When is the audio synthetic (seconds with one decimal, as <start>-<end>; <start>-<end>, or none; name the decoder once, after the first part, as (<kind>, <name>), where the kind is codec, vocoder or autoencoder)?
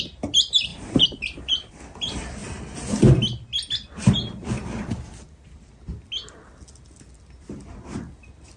0.7-1.7 (vocoder, BigVGAN v2)